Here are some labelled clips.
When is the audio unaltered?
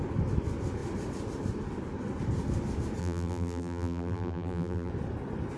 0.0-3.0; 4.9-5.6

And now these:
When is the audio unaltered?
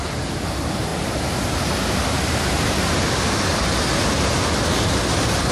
0.0-5.5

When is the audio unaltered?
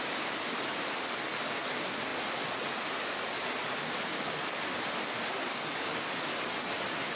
0.0-7.2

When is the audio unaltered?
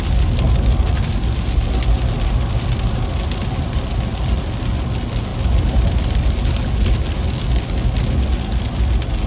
0.0-9.3